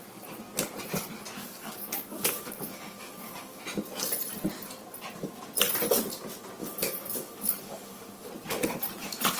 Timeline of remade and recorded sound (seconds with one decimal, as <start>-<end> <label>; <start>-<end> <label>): 0.0-1.4 recorded; 1.4-3.6 remade; 3.6-6.6 recorded; 6.6-8.3 remade; 8.3-9.4 recorded